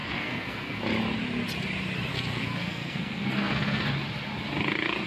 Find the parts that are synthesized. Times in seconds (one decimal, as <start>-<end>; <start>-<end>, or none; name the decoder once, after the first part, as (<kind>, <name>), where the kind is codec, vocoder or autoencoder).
0.0-0.8 (codec, SNAC); 2.1-3.9